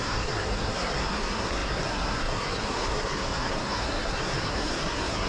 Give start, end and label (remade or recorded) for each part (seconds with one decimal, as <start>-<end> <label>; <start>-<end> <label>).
0.0-5.3 remade